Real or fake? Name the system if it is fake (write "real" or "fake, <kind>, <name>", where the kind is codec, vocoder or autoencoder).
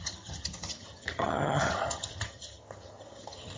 fake, vocoder, HiFi-GAN